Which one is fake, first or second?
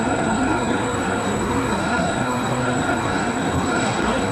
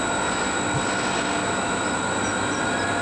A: first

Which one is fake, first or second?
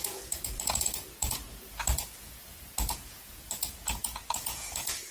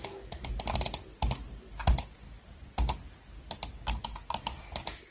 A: first